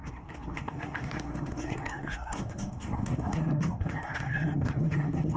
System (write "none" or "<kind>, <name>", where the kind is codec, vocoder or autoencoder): codec, SNAC